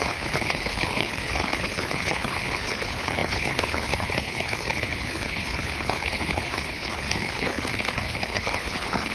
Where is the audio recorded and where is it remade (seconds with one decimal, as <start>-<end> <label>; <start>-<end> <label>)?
0.0-9.1 remade